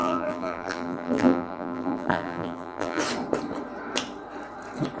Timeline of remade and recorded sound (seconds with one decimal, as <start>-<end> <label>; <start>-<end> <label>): 0.0-3.0 remade; 3.0-5.0 recorded